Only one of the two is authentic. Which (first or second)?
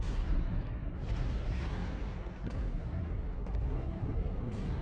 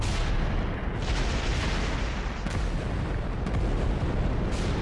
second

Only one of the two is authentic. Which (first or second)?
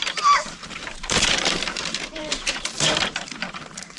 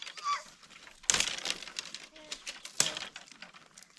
second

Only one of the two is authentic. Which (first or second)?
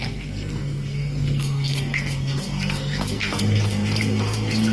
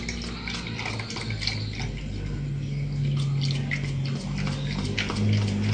second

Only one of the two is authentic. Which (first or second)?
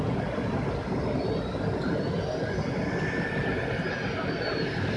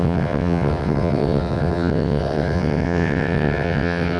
first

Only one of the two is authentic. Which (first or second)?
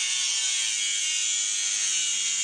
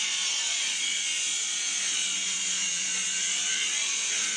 first